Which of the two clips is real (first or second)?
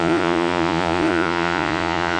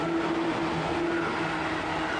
second